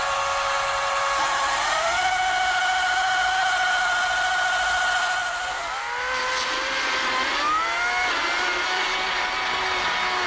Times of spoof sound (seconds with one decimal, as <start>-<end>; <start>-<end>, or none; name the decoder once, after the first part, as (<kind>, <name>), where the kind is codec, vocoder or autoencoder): none